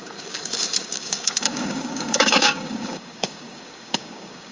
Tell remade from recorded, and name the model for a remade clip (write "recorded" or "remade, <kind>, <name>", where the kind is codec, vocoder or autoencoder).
remade, codec, DAC